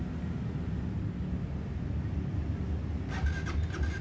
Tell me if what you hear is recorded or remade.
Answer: recorded